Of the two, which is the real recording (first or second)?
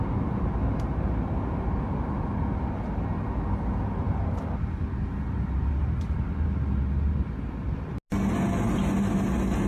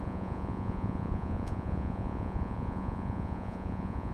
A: first